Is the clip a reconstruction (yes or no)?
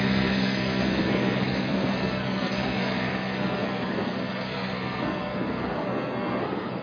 yes